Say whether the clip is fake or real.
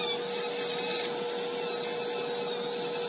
real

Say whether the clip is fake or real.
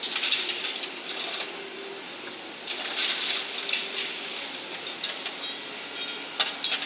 real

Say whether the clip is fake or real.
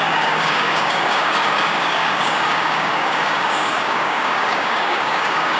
fake